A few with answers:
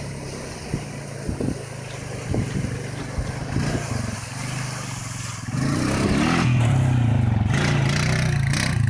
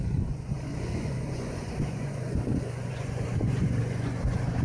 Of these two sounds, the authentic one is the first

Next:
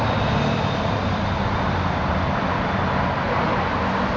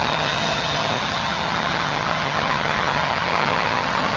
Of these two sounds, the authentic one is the first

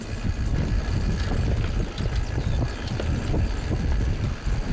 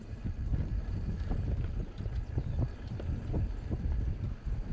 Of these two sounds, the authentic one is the first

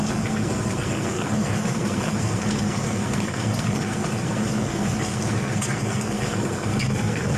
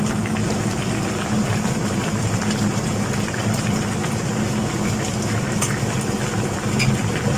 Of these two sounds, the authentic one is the second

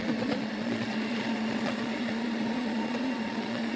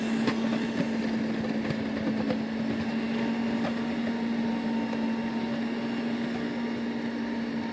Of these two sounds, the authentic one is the second